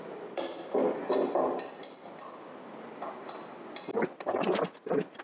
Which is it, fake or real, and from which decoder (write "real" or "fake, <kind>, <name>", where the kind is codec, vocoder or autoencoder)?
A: real